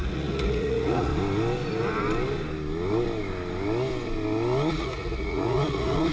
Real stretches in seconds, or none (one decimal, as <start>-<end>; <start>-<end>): 1.1-4.7